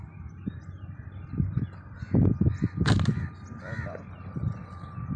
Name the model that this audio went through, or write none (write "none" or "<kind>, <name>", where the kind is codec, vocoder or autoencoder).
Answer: none